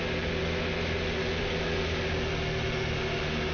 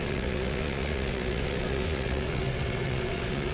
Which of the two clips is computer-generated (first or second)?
second